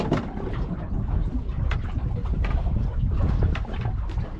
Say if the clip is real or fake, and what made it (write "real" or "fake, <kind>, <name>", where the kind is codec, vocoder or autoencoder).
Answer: real